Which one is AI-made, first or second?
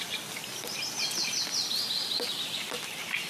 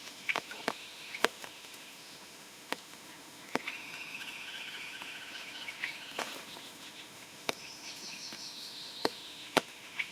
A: second